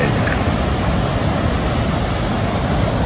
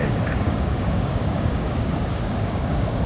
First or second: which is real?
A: first